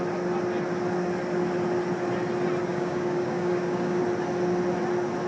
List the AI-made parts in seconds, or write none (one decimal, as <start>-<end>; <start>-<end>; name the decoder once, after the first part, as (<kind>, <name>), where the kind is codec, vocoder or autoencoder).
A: 2.7-4.0 (codec, DAC)